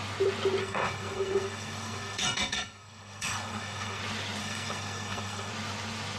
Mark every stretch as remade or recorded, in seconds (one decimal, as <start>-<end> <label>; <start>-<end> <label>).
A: 0.0-0.6 recorded; 0.6-4.0 remade; 4.0-4.4 recorded; 4.4-5.5 remade; 5.5-6.2 recorded